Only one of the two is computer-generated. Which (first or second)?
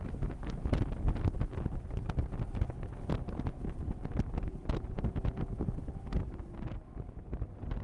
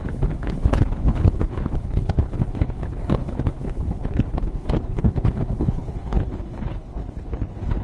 second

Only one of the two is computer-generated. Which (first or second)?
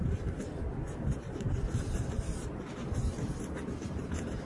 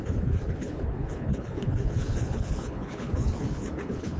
second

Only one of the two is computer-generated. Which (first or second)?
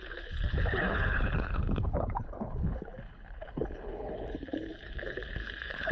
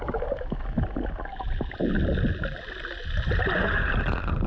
first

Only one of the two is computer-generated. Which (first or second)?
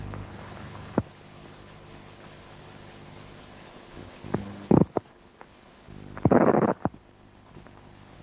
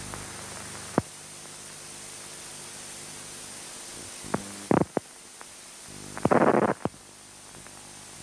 first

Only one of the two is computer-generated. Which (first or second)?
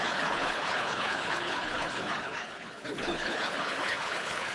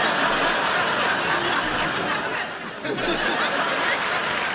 first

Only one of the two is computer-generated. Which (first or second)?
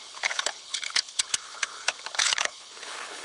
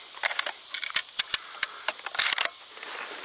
first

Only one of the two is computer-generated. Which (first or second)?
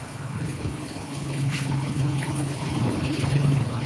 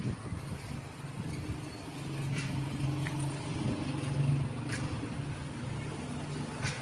first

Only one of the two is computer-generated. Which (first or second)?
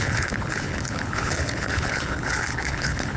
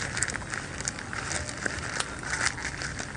first